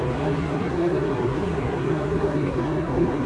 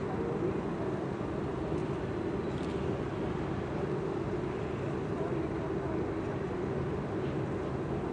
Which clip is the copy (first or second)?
first